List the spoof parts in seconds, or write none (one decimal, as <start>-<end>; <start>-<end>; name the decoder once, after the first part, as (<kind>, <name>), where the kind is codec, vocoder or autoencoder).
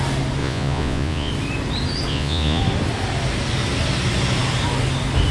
0.4-1.3 (vocoder, Vocos); 2.1-2.6